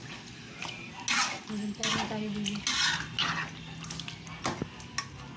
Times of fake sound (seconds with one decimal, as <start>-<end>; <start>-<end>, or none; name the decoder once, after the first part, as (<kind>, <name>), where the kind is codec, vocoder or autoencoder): none

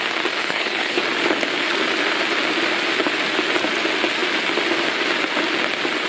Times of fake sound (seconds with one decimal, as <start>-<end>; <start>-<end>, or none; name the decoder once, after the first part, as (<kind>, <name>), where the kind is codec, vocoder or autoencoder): 0.4-1.0 (codec, HILCodec)

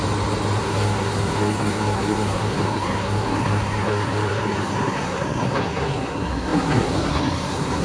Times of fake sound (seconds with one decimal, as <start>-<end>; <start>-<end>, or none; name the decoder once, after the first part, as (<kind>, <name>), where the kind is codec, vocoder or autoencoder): 0.6-7.8 (codec, SNAC)

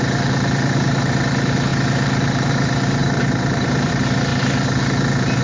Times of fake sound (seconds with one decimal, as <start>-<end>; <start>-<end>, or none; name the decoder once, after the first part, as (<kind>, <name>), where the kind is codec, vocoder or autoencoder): 3.0-3.9 (vocoder, BigVGAN v2)

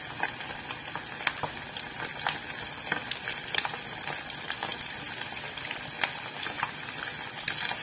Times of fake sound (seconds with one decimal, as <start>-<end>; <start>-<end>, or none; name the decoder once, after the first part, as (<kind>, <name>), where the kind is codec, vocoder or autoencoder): 4.7-5.8 (vocoder, BigVGAN v2)

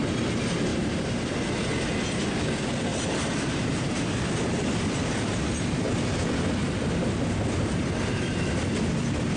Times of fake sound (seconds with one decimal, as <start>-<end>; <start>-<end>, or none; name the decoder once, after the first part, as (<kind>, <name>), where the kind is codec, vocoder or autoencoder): 0.7-1.3 (vocoder, BigVGAN v2); 2.9-4.6

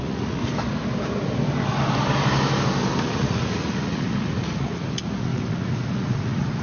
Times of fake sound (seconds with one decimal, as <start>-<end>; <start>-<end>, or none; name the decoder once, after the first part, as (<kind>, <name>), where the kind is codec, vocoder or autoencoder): 0.0-0.4 (vocoder, Vocos); 3.0-6.6

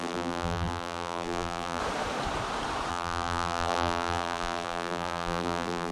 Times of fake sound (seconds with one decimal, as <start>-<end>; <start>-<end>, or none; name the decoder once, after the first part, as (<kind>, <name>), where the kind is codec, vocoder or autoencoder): 0.0-1.8 (vocoder, BigVGAN v2); 2.9-5.9